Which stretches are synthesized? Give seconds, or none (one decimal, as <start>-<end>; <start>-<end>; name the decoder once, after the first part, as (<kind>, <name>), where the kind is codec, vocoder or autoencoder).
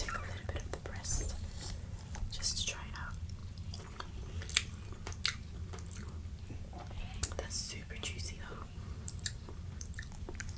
0.0-3.4 (vocoder, BigVGAN v2); 8.4-10.6